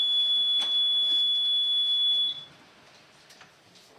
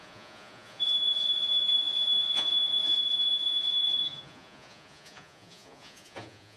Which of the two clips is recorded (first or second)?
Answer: first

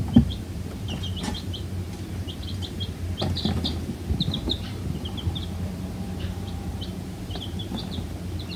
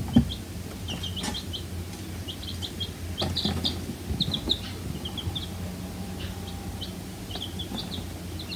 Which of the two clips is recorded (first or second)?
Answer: second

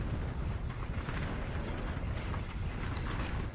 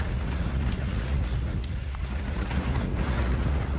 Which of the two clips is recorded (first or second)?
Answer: first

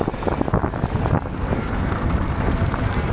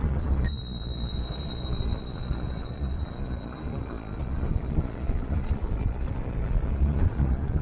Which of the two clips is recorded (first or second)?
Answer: first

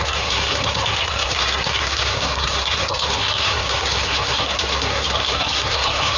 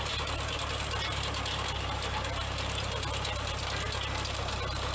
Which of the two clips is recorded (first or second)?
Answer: second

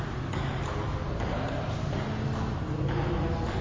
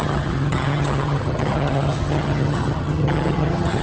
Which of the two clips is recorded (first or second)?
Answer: first